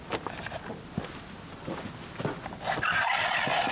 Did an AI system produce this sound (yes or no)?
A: no